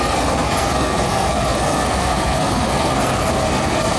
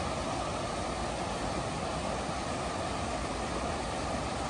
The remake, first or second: first